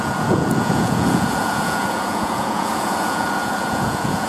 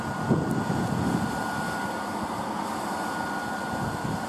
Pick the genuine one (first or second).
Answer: second